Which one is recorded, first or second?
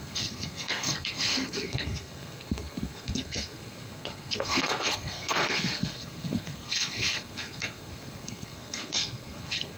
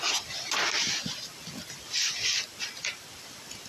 second